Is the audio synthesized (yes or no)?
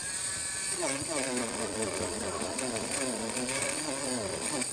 yes